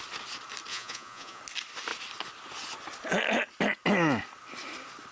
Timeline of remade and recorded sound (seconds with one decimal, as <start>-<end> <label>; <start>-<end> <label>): 0.0-0.7 recorded; 0.7-1.4 remade; 1.4-5.1 recorded